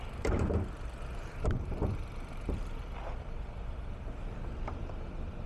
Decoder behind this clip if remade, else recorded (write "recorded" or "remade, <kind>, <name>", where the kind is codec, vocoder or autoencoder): remade, vocoder, BigVGAN v2